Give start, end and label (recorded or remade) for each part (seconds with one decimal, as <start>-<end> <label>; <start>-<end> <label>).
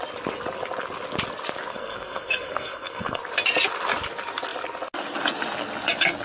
0.0-1.7 recorded; 1.7-3.2 remade; 3.2-6.2 recorded